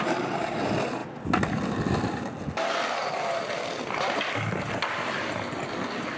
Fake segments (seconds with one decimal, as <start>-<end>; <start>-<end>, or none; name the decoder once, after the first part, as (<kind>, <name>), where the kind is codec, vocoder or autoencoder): none